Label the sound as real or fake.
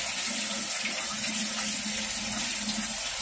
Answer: real